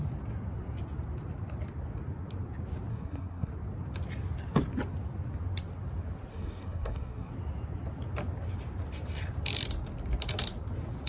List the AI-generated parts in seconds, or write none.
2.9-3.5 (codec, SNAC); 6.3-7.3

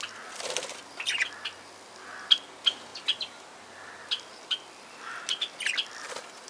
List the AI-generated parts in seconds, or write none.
none

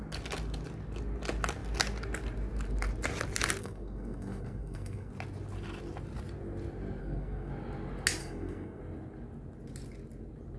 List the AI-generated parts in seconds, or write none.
3.6-5.1 (codec, SNAC); 7.0-7.5; 8.2-8.8

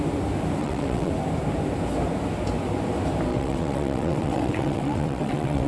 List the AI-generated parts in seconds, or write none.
0.6-1.1 (vocoder, WaveNeXt); 3.3-5.7

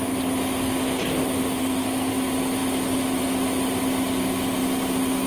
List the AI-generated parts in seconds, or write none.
1.6-2.1 (codec, SNAC)

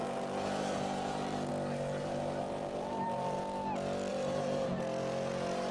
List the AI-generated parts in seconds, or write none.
0.0-1.5 (vocoder, BigVGAN v2); 2.0-3.4; 4.1-4.8

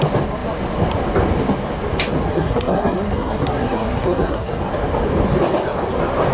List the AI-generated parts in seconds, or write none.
2.3-4.6 (codec, SNAC)